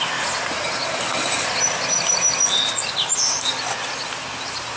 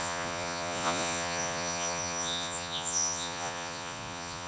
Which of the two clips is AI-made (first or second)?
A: second